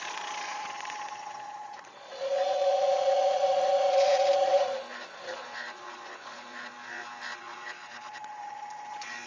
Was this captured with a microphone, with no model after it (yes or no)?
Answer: no